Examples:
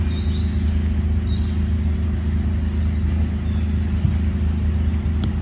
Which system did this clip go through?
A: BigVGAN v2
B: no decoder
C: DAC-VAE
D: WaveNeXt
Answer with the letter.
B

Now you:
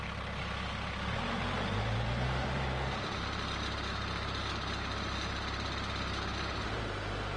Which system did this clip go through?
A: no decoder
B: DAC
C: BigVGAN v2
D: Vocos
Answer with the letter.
C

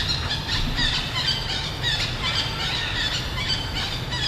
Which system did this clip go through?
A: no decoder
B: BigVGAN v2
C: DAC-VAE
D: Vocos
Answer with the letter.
A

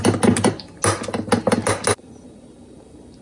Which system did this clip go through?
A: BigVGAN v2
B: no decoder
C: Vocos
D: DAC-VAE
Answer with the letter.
B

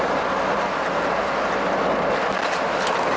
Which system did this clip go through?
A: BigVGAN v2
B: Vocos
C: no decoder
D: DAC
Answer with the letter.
C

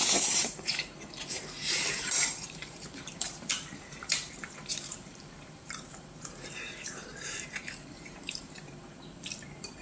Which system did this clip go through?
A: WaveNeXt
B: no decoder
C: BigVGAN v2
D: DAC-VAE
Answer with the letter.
C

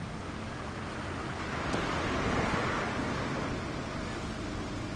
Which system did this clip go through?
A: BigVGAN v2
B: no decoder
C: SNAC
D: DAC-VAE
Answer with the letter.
B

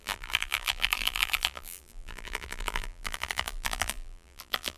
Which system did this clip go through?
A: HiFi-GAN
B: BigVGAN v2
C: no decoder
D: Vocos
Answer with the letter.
B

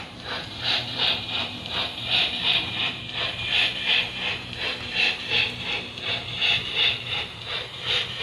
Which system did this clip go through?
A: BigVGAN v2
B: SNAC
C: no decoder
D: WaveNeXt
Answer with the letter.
A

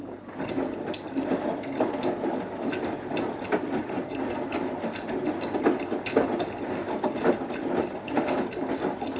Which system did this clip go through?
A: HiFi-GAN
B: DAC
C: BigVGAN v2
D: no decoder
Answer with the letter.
D